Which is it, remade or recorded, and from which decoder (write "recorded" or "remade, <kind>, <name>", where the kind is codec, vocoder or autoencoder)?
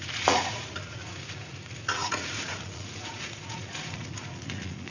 remade, vocoder, Vocos